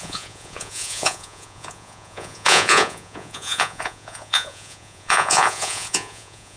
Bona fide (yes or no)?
no